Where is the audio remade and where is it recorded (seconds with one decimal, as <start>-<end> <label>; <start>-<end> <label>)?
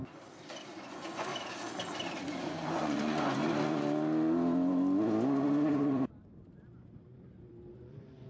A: 0.0-0.8 recorded; 0.8-1.3 remade; 1.3-2.4 recorded; 2.4-3.4 remade; 3.4-7.7 recorded; 7.7-8.3 remade